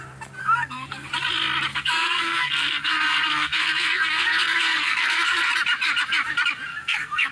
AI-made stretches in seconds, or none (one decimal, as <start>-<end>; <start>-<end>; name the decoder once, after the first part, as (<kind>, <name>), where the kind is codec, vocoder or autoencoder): 0.4-1.1 (codec, SNAC); 1.7-5.5; 6.7-7.3